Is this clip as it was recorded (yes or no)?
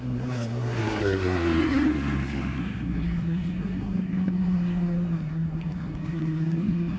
no